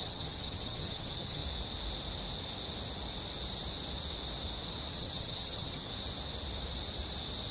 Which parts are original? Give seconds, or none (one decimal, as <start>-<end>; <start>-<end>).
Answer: 1.4-4.9; 5.9-7.5